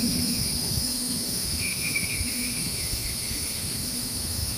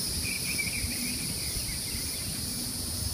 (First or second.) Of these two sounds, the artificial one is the first